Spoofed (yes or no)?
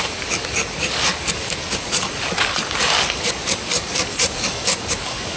yes